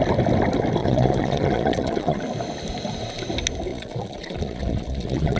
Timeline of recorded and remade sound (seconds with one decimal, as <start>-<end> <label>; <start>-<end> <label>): 0.0-0.8 recorded; 0.8-2.2 remade; 2.2-3.7 recorded; 3.7-5.4 remade